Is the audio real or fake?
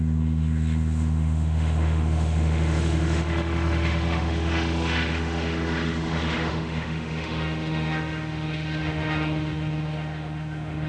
fake